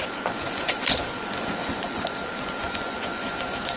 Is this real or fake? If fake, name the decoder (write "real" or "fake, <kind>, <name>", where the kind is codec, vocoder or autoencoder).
fake, vocoder, Vocos